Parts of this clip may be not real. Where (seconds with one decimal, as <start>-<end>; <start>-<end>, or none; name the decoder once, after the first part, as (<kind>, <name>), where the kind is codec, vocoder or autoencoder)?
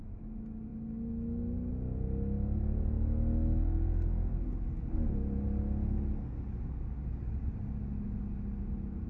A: none